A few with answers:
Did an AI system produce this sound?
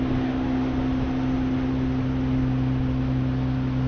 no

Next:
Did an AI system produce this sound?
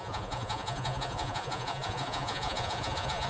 yes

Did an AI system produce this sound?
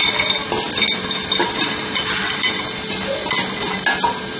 no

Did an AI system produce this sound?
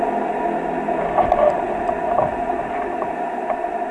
no